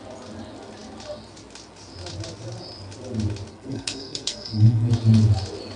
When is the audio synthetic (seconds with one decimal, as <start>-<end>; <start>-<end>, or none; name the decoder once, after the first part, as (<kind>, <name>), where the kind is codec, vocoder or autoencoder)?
3.5-4.9 (codec, SNAC)